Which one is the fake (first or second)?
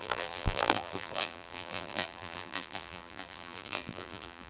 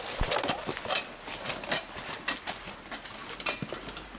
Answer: first